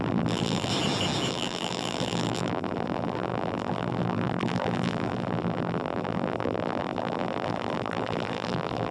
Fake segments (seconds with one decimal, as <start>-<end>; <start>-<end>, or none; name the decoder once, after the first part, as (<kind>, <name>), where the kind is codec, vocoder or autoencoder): 0.0-0.7 (vocoder, BigVGAN v2); 1.3-8.9